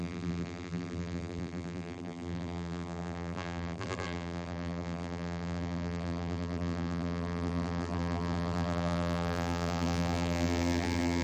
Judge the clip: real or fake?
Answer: fake